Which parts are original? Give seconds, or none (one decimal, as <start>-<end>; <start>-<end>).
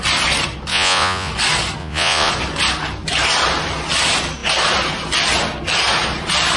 0.0-0.7; 1.3-1.8; 2.3-6.6